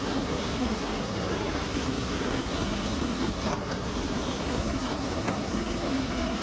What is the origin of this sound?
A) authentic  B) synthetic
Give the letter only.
B